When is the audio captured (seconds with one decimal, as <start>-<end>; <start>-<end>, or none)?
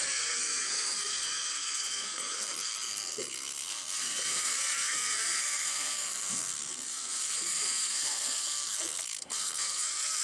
none